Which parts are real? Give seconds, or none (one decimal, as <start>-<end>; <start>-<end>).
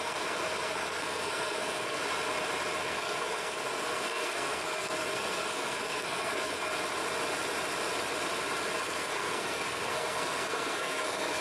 2.0-2.8; 6.7-8.8